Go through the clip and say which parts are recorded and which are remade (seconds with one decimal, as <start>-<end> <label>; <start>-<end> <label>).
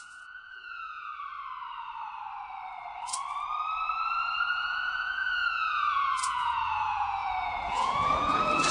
0.0-1.1 remade; 1.1-4.5 recorded; 4.5-8.7 remade